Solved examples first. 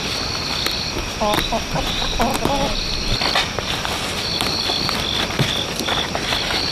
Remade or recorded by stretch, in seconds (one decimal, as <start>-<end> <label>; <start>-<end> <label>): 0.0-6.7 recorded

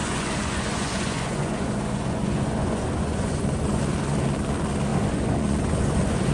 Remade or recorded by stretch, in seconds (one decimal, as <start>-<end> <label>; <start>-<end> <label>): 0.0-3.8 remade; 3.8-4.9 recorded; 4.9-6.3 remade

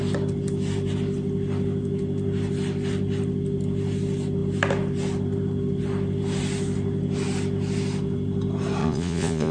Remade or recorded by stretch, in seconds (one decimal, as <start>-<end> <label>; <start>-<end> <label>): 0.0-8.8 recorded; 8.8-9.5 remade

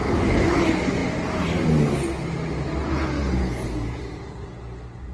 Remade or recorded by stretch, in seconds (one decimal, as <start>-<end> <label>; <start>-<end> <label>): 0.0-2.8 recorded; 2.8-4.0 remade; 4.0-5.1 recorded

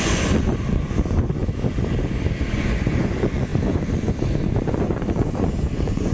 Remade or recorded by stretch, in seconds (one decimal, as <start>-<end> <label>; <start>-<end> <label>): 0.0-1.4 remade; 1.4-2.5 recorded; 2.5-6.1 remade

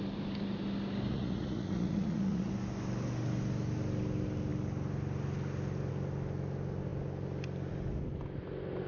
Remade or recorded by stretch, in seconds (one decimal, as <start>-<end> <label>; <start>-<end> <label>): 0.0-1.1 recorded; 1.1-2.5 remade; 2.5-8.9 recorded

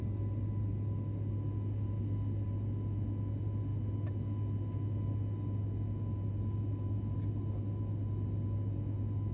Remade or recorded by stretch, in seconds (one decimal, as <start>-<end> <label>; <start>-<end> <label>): 0.0-9.3 recorded

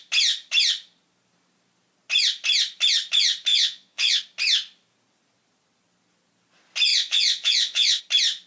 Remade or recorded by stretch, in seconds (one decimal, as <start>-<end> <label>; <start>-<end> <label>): 0.0-3.5 recorded; 3.5-4.2 remade; 4.2-6.9 recorded; 6.9-8.0 remade; 8.0-8.5 recorded